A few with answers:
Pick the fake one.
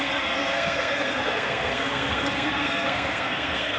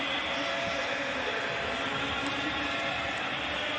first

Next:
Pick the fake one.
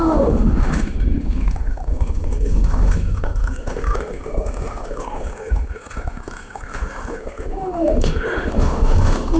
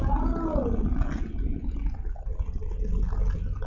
first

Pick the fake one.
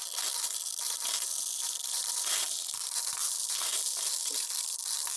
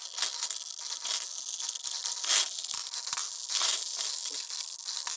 first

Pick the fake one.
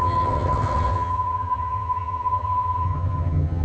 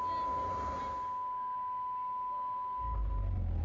first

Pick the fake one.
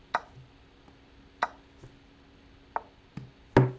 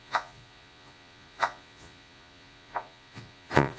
second